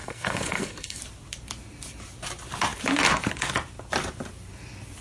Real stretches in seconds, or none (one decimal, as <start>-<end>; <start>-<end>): 1.0-5.0